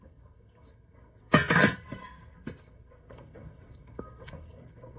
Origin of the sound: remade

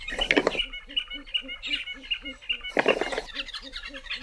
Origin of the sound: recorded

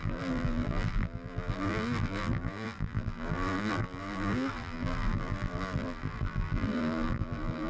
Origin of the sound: remade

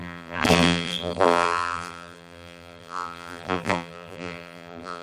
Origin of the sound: remade